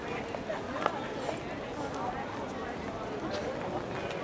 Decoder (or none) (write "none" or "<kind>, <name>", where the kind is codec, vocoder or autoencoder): none